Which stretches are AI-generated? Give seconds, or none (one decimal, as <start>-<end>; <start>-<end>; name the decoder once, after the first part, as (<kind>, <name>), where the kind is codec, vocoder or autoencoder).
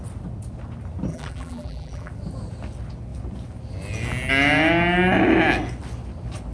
1.1-2.1 (vocoder, BigVGAN v2)